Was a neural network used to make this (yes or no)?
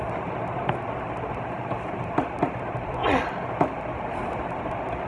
no